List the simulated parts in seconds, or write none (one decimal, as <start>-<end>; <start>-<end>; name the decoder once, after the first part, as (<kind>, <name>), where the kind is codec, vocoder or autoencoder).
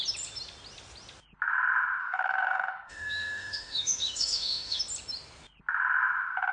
2.0-4.8 (autoencoder, DAC-VAE)